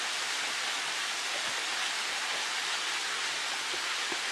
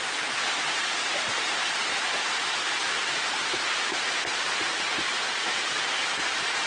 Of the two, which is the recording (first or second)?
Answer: first